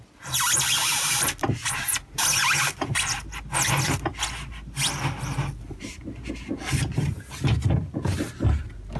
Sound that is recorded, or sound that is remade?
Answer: recorded